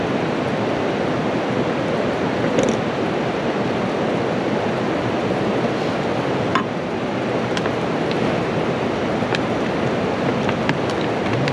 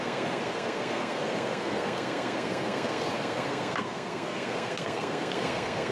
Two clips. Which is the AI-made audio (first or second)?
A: second